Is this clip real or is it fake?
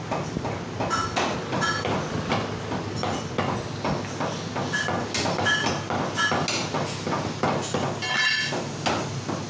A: real